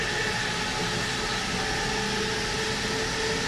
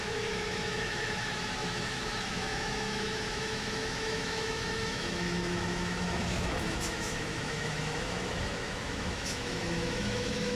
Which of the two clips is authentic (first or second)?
first